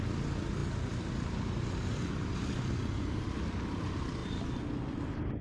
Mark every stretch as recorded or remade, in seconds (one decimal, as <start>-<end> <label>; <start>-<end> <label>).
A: 0.0-5.4 recorded

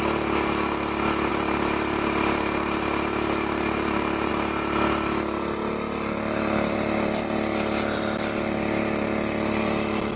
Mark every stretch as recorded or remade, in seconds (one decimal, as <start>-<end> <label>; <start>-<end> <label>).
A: 0.0-1.3 recorded; 1.3-4.3 remade; 4.3-10.2 recorded

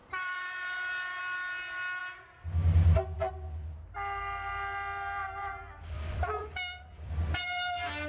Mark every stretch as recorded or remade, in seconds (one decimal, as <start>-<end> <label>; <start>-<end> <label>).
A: 0.0-1.2 remade; 1.2-5.2 recorded; 5.2-7.1 remade; 7.1-8.1 recorded

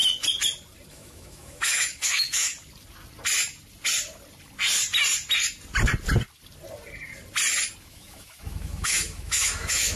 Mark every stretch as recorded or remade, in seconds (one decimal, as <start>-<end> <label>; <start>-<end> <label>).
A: 0.0-0.9 recorded; 0.9-2.5 remade; 2.5-7.8 recorded; 7.8-10.0 remade

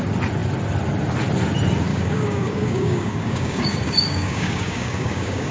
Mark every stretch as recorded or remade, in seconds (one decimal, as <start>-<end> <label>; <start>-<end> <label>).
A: 0.0-1.9 recorded; 1.9-5.5 remade

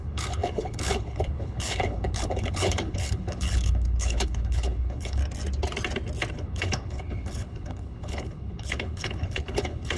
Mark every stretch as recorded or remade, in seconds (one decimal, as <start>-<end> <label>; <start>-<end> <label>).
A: 0.0-5.2 remade; 5.2-6.3 recorded; 6.3-10.0 remade

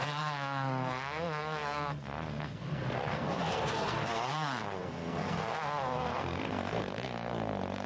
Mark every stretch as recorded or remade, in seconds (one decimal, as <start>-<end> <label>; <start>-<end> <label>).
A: 0.0-7.9 remade